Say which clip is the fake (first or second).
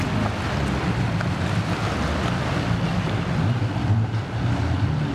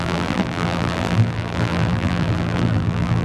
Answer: second